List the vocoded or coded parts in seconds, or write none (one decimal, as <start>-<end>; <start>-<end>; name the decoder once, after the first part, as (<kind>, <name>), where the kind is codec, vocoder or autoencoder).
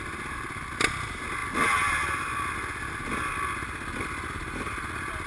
none